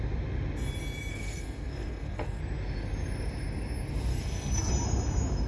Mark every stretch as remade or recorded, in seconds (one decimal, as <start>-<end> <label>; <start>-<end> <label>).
0.0-1.1 recorded; 1.1-2.4 remade; 2.4-4.1 recorded; 4.1-4.7 remade; 4.7-5.5 recorded